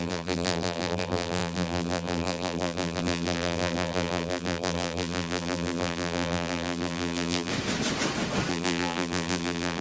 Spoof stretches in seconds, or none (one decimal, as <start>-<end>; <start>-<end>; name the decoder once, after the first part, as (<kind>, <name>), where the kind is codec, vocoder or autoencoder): 0.0-7.5 (vocoder, BigVGAN v2); 8.5-9.8

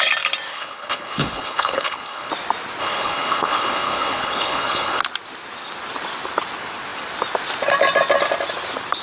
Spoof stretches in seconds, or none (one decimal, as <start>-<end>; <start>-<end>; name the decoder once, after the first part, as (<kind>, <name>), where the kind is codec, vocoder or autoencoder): 0.5-2.3 (codec, HILCodec); 2.8-5.0

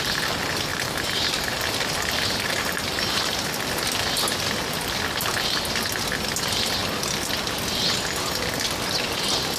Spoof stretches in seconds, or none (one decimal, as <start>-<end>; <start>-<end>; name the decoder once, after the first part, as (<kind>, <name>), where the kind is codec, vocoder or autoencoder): 0.7-3.5 (vocoder, BigVGAN v2)

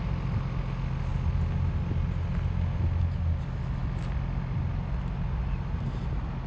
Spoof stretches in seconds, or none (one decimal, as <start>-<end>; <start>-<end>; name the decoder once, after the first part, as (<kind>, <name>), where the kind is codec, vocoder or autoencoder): none

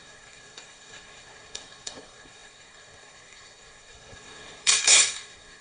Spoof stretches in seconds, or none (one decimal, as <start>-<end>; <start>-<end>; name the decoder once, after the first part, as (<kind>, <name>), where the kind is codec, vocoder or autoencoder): 0.0-5.6 (codec, SNAC)